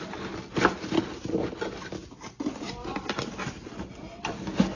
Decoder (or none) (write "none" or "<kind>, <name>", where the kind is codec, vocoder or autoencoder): none